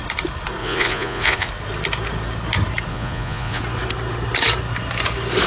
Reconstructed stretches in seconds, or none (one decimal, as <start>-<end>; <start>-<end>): 0.6-1.5; 2.9-3.6